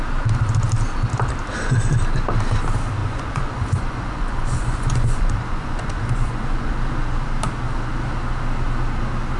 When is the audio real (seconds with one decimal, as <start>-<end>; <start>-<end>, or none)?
0.0-3.0; 6.7-9.4